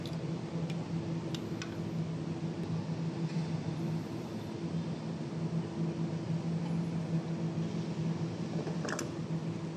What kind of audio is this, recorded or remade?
recorded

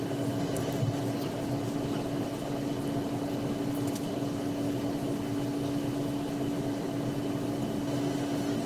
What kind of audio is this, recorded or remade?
recorded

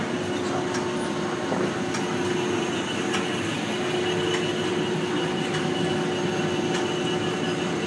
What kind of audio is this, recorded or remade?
recorded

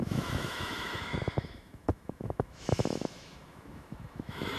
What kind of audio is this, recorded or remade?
remade